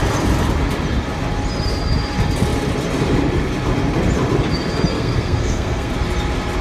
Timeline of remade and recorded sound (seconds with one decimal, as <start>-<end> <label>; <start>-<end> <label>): 0.0-4.9 recorded; 4.9-5.9 remade; 5.9-6.6 recorded